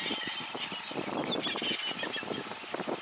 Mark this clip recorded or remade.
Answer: recorded